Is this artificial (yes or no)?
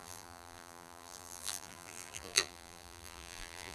yes